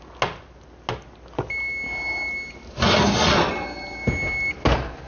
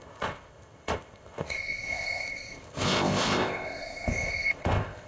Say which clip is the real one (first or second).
first